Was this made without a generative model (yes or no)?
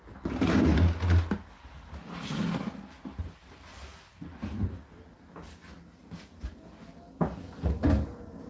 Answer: yes